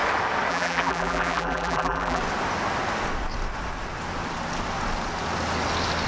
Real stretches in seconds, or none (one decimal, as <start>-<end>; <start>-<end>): 0.0-0.5; 2.2-6.1